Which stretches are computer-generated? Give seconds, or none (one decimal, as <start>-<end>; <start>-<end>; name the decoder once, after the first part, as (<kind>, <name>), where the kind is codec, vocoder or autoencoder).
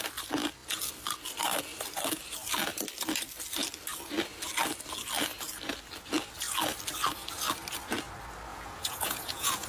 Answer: 8.5-9.7 (vocoder, Vocos)